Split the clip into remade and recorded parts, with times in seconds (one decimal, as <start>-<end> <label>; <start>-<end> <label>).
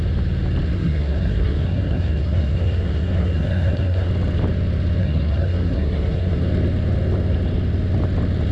0.0-0.7 recorded; 0.7-4.1 remade; 4.1-5.0 recorded; 5.0-6.4 remade; 6.4-8.5 recorded